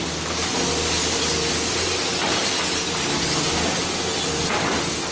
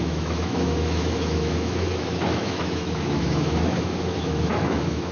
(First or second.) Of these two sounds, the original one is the first